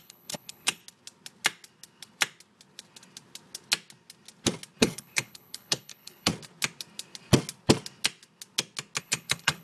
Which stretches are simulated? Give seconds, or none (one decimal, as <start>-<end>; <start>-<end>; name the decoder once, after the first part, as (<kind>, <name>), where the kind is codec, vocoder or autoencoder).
0.0-0.8 (codec, HILCodec); 4.8-6.3; 9.0-9.6